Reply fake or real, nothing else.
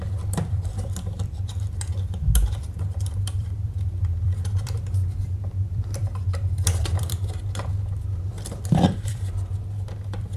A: fake